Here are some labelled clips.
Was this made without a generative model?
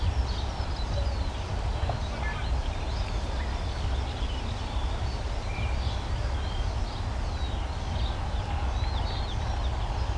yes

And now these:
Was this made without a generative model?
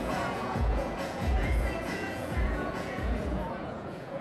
no